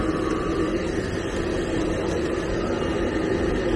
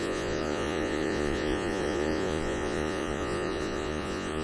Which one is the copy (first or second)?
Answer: second